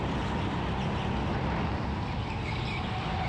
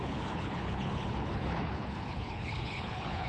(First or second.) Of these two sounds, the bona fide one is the first